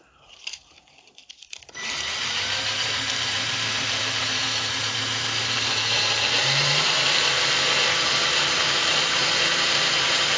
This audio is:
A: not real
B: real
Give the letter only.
A